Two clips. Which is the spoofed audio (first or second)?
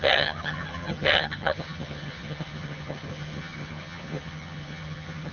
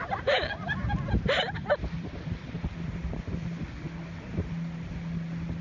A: first